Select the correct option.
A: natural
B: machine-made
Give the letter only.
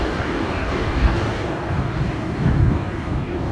B